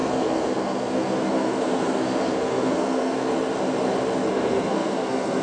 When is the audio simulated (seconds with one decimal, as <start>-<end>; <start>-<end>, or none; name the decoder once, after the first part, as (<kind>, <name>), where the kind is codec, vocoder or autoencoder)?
0.0-3.3 (codec, SNAC); 4.3-5.4